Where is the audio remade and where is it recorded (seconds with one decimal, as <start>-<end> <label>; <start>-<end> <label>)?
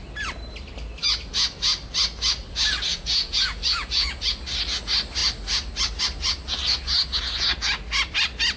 0.0-2.9 recorded; 2.9-4.3 remade; 4.3-8.6 recorded